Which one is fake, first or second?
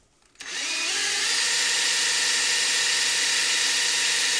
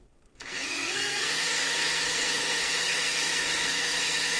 second